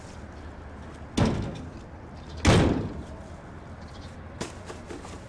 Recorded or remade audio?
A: recorded